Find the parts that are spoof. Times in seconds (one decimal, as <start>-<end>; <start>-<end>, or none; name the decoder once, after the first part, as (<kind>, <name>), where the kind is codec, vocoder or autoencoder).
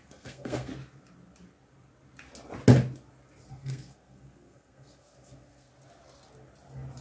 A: 0.0-0.7 (codec, SNAC); 3.5-5.7